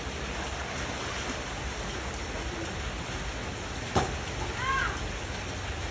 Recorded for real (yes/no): yes